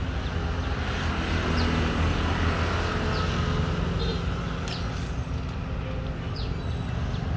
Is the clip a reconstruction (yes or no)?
no